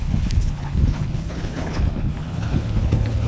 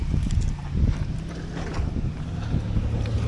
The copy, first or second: first